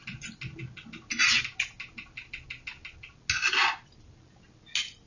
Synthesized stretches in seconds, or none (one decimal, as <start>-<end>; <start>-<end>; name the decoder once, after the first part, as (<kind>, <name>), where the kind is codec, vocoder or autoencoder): none